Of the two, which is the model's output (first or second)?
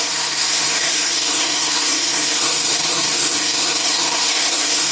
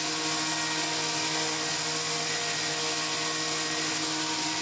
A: first